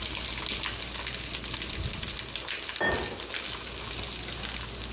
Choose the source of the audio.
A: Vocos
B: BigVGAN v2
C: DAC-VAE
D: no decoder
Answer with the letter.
D